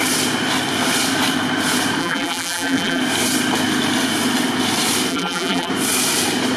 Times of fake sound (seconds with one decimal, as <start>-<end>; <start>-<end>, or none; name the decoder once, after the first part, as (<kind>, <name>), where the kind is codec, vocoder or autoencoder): 2.0-3.0 (vocoder, BigVGAN v2); 5.1-5.7